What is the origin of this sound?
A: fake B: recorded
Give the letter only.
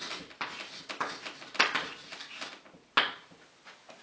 B